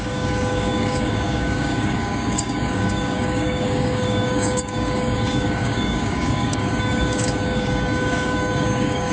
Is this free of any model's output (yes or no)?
no